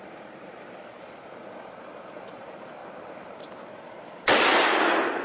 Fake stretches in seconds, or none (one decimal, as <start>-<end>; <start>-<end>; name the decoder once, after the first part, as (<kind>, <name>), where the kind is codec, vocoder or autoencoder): 0.0-2.8 (vocoder, BigVGAN v2); 4.8-5.2